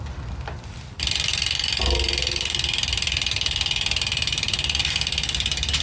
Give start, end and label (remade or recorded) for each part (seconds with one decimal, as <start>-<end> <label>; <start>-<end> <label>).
0.0-5.8 recorded